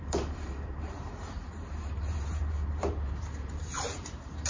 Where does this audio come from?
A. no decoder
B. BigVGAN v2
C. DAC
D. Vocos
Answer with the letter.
B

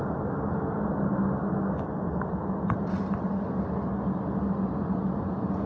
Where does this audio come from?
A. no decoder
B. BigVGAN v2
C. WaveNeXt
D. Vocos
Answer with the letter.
A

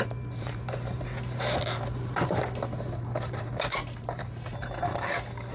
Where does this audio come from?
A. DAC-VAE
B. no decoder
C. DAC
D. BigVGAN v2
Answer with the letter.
D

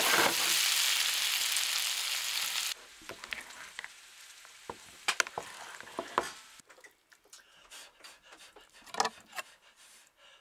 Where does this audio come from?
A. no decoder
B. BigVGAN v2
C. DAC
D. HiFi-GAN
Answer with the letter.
A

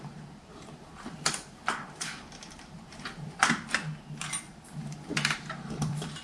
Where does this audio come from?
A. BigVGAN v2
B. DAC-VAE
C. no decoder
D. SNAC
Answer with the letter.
A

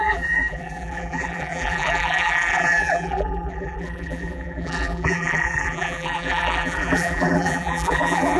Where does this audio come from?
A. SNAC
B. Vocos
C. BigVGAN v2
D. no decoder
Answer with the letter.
C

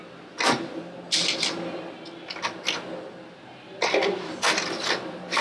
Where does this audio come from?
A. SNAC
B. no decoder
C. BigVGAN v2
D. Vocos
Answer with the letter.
B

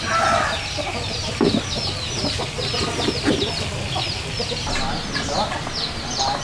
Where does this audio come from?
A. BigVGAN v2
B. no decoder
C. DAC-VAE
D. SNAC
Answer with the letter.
B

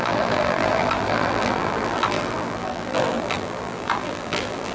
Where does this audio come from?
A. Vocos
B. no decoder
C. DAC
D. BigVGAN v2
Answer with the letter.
D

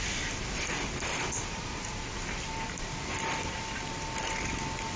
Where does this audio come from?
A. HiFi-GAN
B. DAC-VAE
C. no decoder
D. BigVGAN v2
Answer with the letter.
D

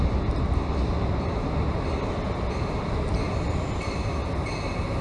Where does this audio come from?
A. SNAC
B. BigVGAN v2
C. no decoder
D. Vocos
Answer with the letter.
C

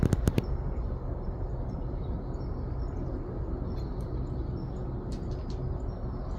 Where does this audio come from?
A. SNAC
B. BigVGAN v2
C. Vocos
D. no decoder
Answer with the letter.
D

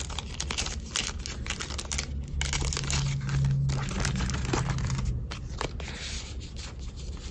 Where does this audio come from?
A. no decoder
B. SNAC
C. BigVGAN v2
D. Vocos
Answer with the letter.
A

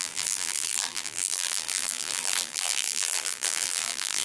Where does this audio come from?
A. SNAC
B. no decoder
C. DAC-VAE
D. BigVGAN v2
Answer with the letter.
D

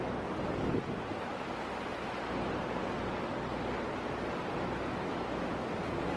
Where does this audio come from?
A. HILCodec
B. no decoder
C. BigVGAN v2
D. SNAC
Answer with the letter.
B